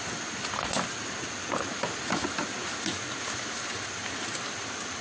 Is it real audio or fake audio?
real